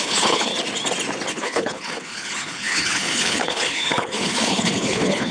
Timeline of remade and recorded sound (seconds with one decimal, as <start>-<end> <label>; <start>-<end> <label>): 0.0-0.5 remade; 0.5-1.3 recorded; 1.3-5.3 remade